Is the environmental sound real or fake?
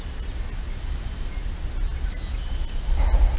real